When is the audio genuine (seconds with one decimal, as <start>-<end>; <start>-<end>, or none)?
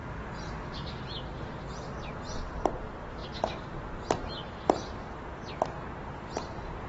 0.0-2.7; 3.2-5.4